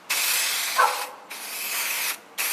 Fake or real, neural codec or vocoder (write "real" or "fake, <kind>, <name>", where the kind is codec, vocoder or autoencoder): real